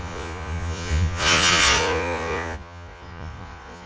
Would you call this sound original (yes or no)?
no